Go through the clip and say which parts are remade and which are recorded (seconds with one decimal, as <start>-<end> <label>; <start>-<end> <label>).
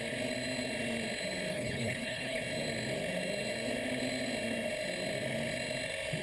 0.0-1.5 recorded; 1.5-2.4 remade; 2.4-6.2 recorded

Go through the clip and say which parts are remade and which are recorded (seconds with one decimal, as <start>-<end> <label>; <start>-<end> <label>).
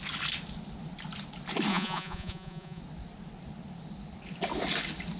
0.0-1.7 recorded; 1.7-2.8 remade; 2.8-5.2 recorded